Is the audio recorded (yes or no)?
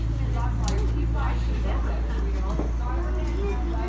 yes